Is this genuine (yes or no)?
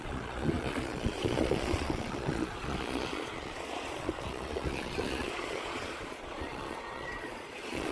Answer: no